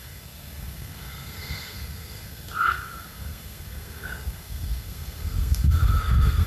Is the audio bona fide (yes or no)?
no